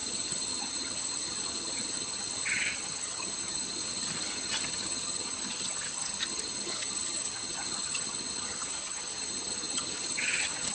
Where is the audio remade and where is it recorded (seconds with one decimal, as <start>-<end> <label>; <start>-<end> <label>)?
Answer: 0.0-10.7 remade